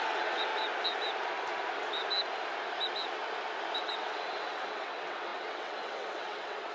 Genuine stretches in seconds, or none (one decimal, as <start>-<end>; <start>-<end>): 0.5-3.8

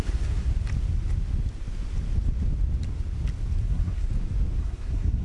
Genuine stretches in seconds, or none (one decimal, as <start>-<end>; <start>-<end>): 0.5-3.6; 4.1-4.6

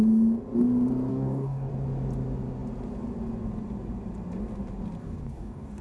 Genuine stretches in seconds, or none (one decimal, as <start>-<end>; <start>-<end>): 0.0-1.1; 1.7-5.0

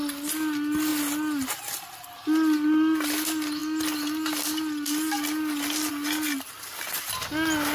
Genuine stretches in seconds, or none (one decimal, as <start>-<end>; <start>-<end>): 0.0-7.7

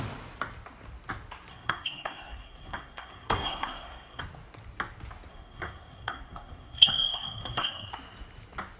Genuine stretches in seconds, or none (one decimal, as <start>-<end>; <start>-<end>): 0.0-1.5; 4.2-5.3; 7.9-8.8

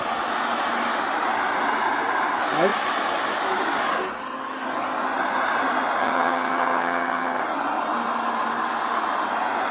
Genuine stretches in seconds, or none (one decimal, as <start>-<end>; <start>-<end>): 0.0-6.0; 7.4-9.7

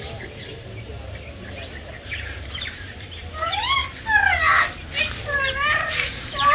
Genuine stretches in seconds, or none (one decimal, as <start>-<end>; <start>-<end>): 3.8-5.0

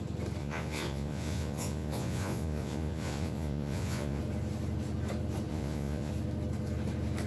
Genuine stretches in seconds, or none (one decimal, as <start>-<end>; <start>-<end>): 0.0-0.4; 4.2-5.5; 6.1-7.3